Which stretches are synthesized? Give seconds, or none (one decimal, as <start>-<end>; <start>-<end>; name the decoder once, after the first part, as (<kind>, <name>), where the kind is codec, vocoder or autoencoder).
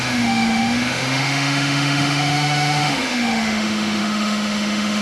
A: 0.0-5.0 (autoencoder, DAC-VAE)